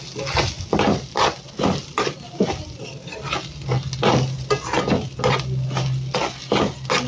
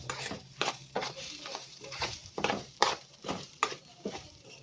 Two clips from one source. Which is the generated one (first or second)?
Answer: second